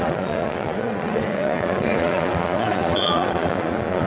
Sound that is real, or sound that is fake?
fake